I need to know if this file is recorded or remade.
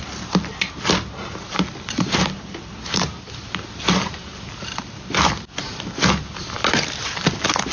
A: recorded